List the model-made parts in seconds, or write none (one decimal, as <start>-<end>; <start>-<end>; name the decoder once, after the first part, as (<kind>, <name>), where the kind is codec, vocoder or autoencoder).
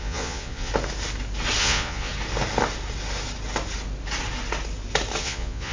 0.0-0.7 (vocoder, Vocos); 1.6-2.1; 5.2-5.7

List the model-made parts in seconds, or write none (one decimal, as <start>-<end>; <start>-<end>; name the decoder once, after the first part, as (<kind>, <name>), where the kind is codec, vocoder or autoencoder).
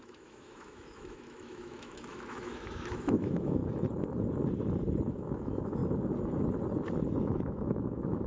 0.0-3.6 (autoencoder, DAC-VAE); 5.1-5.8; 7.2-8.3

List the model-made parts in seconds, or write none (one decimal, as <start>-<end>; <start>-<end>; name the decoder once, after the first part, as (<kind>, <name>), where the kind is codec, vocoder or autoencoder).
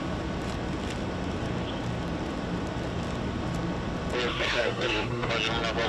4.3-5.3 (codec, SNAC)